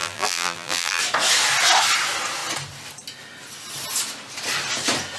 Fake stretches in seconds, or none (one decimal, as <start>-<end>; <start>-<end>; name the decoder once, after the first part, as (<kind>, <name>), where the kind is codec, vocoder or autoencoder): 0.0-1.0 (vocoder, BigVGAN v2)